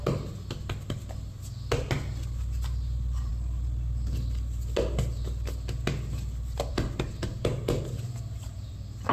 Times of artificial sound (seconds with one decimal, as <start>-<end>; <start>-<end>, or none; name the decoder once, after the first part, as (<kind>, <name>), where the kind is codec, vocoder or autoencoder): 7.3-8.7 (vocoder, BigVGAN v2)